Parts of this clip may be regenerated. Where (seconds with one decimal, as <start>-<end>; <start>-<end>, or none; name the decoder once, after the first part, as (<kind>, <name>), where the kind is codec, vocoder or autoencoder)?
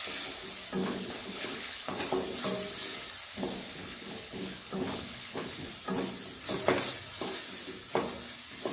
0.8-2.0 (codec, HILCodec); 3.6-5.7